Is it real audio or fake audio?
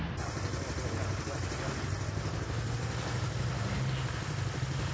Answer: real